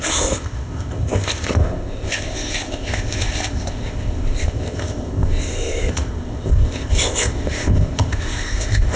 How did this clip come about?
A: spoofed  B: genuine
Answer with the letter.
A